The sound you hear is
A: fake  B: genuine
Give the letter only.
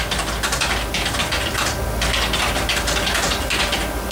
B